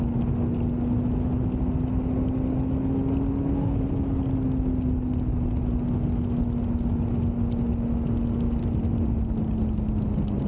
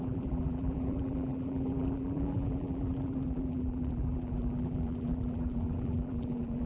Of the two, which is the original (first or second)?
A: first